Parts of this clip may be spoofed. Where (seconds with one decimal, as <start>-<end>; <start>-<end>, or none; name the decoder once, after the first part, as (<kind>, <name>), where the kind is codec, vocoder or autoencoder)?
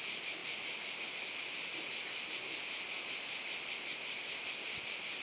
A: none